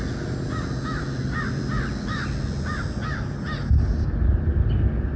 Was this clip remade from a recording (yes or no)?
no